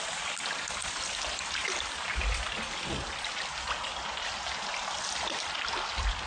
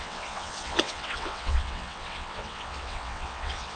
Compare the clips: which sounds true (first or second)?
first